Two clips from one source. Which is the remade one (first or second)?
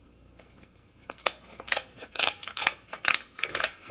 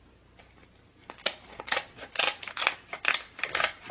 first